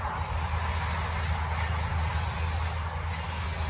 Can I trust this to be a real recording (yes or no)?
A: yes